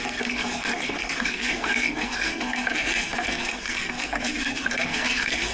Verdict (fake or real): fake